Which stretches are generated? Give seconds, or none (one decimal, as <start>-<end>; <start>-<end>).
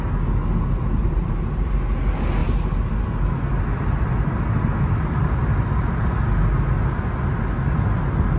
1.0-1.7